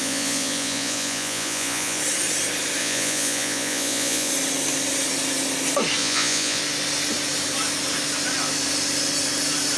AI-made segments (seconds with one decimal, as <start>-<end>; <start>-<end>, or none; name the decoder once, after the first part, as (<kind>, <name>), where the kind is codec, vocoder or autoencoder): 0.0-2.0 (vocoder, Vocos); 2.8-4.3; 6.0-6.6